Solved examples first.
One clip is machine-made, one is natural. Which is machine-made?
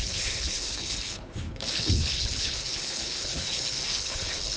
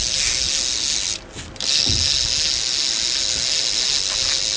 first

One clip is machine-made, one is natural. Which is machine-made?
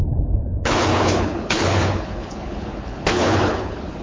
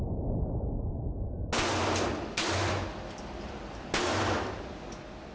first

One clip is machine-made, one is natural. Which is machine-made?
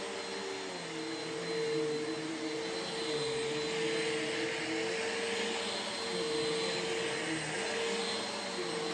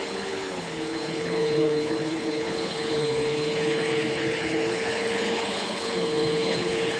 second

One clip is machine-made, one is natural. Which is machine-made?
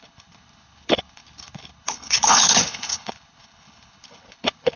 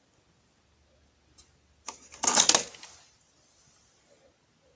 first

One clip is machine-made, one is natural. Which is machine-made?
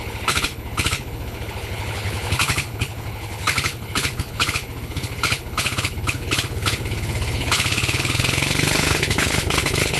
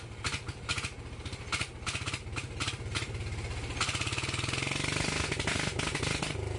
first